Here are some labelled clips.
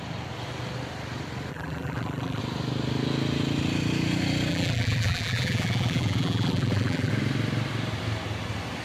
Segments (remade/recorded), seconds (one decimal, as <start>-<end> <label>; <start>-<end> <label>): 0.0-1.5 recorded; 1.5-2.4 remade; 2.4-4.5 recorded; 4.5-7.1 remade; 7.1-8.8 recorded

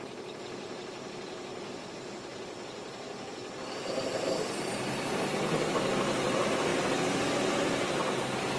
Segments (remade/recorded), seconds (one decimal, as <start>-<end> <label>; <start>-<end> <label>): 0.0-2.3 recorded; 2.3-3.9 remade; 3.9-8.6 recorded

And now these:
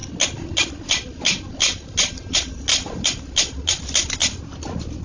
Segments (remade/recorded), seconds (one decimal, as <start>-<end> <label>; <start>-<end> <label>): 0.0-5.0 recorded